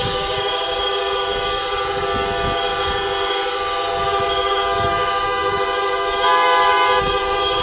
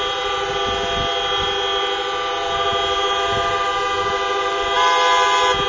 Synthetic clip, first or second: first